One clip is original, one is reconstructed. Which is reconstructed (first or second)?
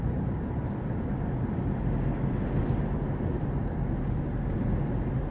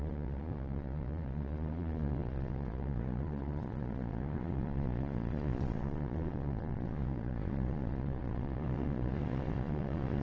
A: second